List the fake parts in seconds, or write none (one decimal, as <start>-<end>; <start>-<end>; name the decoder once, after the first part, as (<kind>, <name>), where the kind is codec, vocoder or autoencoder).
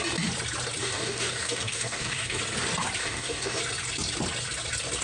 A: 0.8-2.4 (codec, DAC); 3.0-3.6